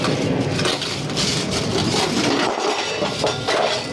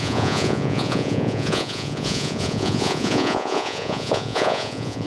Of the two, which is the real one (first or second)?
first